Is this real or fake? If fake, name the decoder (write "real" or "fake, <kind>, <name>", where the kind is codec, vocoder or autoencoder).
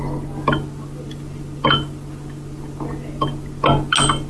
real